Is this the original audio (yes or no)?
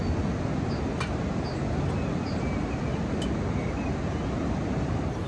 yes